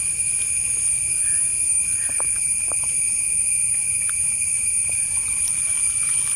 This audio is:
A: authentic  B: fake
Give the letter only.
A